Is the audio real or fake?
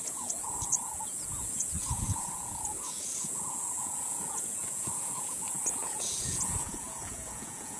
fake